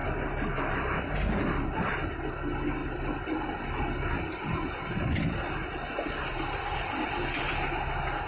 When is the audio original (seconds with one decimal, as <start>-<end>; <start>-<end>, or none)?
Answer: 0.0-8.3